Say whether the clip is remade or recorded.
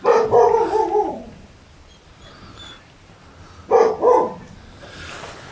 recorded